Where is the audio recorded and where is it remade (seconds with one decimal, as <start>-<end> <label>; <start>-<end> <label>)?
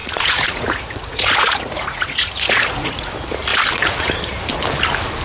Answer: 0.0-3.1 remade; 3.1-3.5 recorded; 3.5-4.1 remade; 4.1-5.2 recorded